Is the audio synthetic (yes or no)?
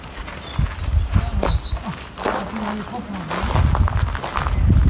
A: no